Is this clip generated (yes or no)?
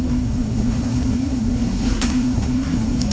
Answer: yes